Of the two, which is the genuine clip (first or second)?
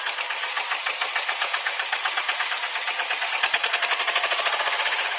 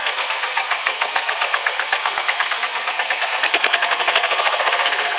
first